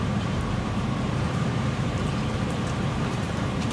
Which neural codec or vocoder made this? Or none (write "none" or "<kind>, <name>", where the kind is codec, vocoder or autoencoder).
vocoder, BigVGAN v2